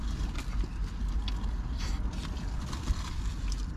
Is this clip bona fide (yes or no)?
yes